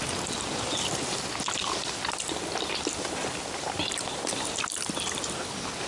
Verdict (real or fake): real